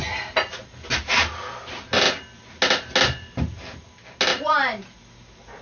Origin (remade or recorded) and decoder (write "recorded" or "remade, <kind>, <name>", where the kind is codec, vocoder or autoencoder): recorded